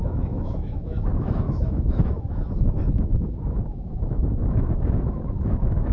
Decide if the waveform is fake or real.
fake